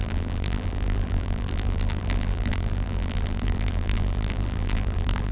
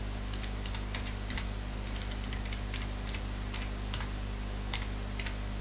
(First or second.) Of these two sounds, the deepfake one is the first